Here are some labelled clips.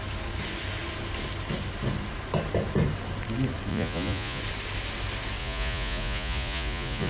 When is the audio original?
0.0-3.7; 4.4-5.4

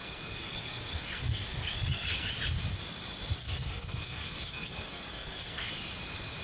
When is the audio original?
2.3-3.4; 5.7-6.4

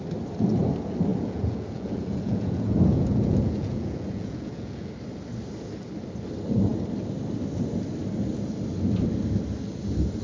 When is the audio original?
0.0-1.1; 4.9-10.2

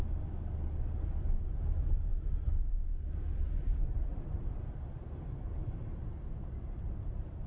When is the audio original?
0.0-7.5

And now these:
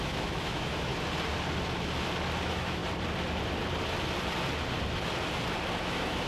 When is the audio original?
0.9-2.4; 2.8-5.8